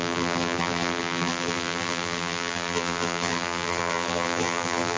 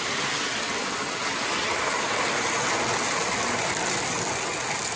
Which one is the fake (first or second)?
first